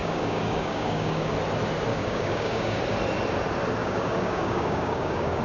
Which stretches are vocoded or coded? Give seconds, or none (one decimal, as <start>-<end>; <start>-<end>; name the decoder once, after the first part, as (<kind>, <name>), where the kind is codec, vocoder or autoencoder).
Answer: 0.0-1.3 (codec, DAC); 1.9-2.8; 3.8-5.4